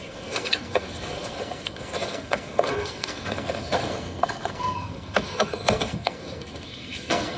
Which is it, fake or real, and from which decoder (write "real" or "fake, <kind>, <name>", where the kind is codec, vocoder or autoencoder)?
fake, codec, SNAC